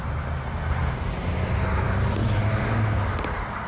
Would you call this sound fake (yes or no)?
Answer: no